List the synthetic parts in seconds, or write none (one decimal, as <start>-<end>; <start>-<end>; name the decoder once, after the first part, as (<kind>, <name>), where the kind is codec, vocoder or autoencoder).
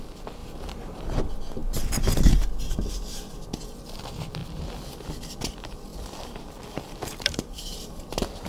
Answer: 0.4-1.2 (vocoder, BigVGAN v2); 1.6-2.2; 5.9-8.5